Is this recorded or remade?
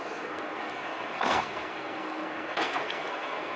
remade